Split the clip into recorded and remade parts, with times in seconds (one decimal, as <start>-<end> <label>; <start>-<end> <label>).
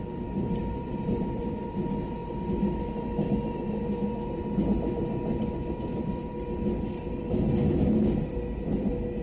0.0-0.6 recorded; 0.6-1.4 remade; 1.4-9.2 recorded